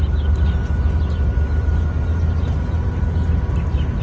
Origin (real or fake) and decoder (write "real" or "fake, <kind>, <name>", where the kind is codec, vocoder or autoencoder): real